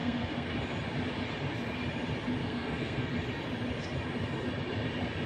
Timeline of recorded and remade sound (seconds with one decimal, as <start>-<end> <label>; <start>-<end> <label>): 0.0-0.5 remade; 0.5-2.4 recorded; 2.4-3.1 remade; 3.1-5.3 recorded